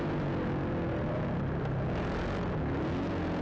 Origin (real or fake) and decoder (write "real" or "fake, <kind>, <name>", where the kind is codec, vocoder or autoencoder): real